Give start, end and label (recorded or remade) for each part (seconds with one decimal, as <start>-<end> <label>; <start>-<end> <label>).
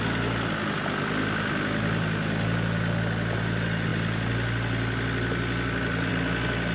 0.0-6.7 recorded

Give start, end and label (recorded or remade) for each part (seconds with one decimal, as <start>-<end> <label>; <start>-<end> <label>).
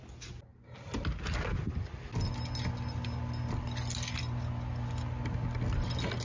0.0-6.2 recorded